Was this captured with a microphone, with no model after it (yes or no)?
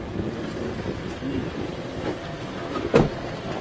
yes